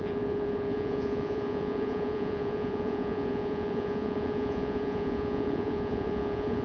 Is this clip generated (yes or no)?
yes